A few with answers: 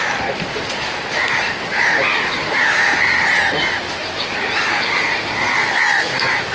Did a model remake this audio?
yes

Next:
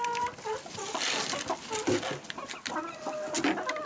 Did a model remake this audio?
no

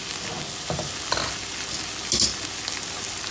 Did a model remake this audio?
no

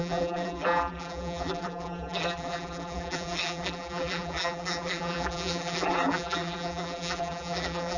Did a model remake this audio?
yes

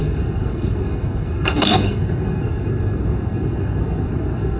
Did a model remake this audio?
yes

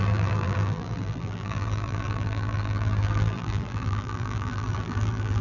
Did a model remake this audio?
yes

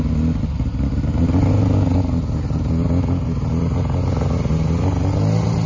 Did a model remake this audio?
no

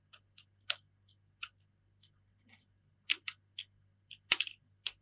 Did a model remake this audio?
no